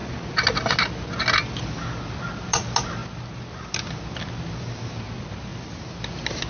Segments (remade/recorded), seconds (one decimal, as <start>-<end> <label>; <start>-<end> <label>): 0.0-6.5 recorded